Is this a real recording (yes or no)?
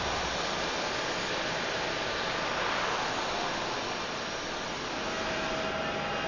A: yes